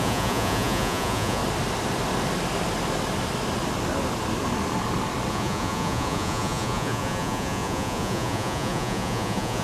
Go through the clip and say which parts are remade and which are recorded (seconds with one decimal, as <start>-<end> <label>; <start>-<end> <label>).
0.0-1.4 remade; 1.4-5.3 recorded; 5.3-9.6 remade